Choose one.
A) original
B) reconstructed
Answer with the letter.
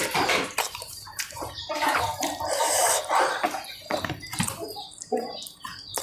B